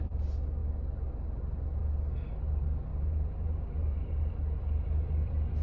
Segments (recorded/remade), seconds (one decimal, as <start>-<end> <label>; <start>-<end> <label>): 0.0-2.9 recorded; 2.9-4.3 remade; 4.3-5.6 recorded